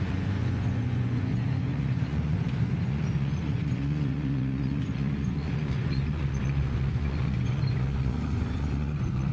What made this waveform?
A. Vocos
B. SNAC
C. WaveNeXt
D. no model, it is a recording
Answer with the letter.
A